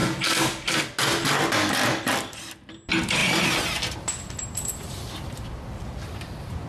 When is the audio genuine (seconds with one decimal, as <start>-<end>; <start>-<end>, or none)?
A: 0.8-3.2; 4.2-6.7

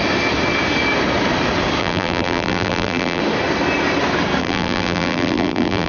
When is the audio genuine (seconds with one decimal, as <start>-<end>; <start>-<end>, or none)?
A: 0.0-1.8; 3.2-4.4

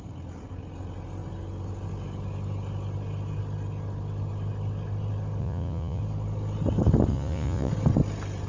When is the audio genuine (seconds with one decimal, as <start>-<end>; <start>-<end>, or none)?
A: 0.0-5.4; 6.0-7.1; 7.7-8.5

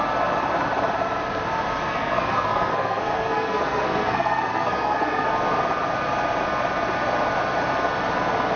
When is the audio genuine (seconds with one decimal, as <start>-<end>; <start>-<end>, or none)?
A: 0.0-1.9; 5.3-8.6